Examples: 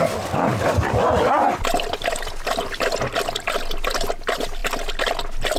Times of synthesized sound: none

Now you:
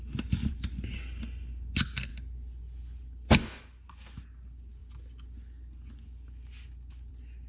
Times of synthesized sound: none

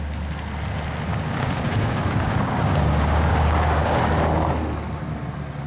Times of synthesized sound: 1.1-4.1 (codec, DAC)